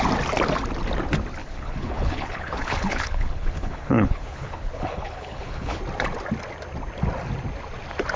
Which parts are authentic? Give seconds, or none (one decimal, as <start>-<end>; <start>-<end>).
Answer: 0.0-1.4; 5.8-8.2